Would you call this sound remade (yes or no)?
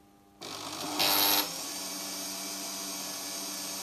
no